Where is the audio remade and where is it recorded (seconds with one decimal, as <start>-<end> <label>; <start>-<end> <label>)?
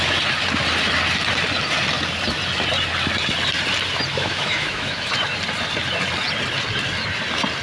0.0-4.1 recorded; 4.1-5.1 remade; 5.1-7.6 recorded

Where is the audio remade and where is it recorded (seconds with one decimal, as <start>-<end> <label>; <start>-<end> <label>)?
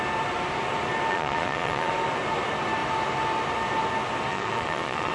0.0-1.1 recorded; 1.1-1.9 remade; 1.9-4.3 recorded; 4.3-5.1 remade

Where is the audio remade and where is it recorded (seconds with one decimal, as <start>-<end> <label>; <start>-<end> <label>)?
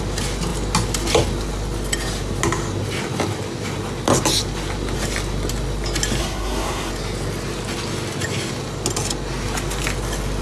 0.0-6.2 recorded; 6.2-6.9 remade; 6.9-10.4 recorded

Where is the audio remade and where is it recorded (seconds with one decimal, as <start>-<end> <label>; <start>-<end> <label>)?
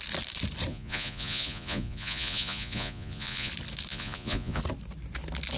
0.0-0.7 recorded; 0.7-3.5 remade; 3.5-3.9 recorded; 3.9-4.6 remade; 4.6-5.6 recorded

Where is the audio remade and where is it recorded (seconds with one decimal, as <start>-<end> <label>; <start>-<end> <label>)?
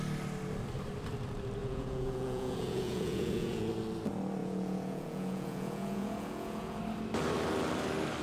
0.0-1.6 recorded; 1.6-3.7 remade; 3.7-4.4 recorded; 4.4-6.8 remade; 6.8-8.2 recorded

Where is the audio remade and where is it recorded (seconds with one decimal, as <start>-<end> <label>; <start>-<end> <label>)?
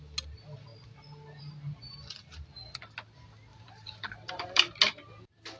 0.0-3.5 recorded; 3.5-4.6 remade; 4.6-5.6 recorded